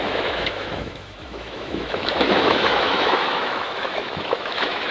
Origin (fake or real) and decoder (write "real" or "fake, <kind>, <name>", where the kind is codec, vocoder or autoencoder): fake, autoencoder, DAC-VAE